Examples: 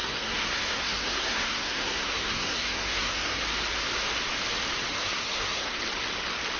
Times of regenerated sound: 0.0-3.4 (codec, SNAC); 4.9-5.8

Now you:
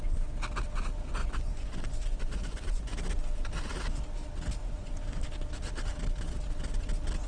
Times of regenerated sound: 1.2-2.9 (vocoder, Vocos); 4.6-5.2

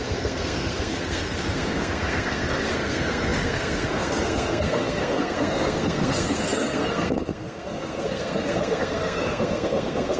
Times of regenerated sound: 0.0-10.2 (codec, SNAC)